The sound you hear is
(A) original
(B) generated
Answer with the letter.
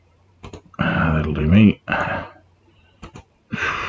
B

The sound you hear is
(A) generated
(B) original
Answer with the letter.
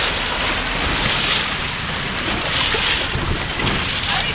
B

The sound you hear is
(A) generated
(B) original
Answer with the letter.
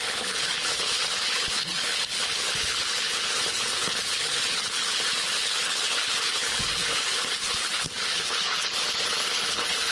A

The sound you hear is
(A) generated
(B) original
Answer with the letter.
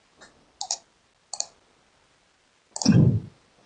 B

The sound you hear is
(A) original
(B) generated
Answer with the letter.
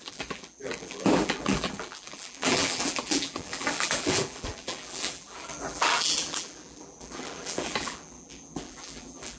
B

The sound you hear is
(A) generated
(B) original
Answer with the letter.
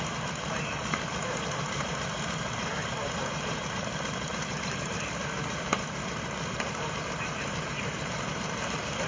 A